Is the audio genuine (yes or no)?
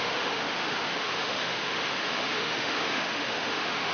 no